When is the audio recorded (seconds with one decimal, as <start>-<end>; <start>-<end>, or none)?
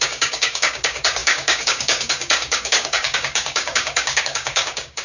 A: none